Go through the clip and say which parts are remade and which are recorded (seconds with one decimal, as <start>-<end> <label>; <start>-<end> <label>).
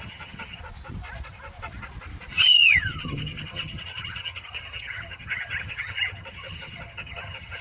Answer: 0.0-0.6 remade; 0.6-2.3 recorded; 2.3-7.6 remade